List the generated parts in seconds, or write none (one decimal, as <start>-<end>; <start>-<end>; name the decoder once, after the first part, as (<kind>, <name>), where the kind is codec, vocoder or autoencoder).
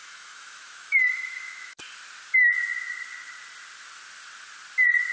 0.0-1.8 (autoencoder, DAC-VAE)